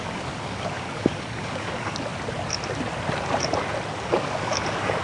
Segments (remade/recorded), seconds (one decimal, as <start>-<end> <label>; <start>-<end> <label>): 0.0-2.1 remade; 2.1-3.9 recorded; 3.9-5.0 remade